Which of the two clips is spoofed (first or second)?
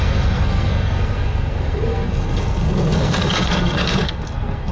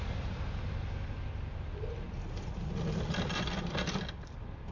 first